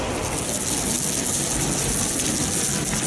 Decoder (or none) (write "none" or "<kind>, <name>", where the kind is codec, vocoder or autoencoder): none